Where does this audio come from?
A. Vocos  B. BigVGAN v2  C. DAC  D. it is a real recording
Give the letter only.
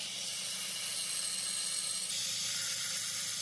D